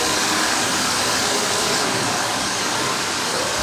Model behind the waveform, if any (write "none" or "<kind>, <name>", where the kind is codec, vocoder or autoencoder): codec, DAC